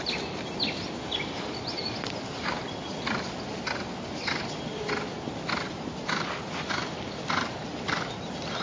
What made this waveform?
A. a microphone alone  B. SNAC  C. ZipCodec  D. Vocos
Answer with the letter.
A